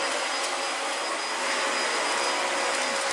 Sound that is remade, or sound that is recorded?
recorded